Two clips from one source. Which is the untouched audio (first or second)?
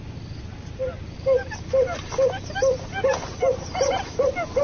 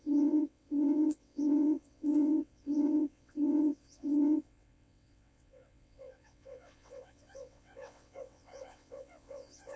first